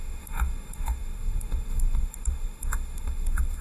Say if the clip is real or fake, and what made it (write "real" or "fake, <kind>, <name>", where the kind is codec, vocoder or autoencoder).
fake, autoencoder, DAC-VAE